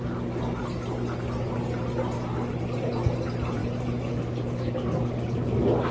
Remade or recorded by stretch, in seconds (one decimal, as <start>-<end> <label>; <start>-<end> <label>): 0.0-3.6 recorded; 3.6-4.1 remade; 4.1-5.9 recorded